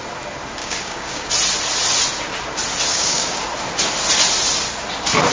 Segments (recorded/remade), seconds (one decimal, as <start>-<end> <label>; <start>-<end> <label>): 0.0-0.6 recorded; 0.6-1.3 remade; 1.3-2.9 recorded; 2.9-3.4 remade; 3.4-5.3 recorded